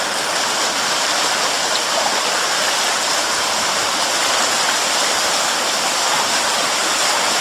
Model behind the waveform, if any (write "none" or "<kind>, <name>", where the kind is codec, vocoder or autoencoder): none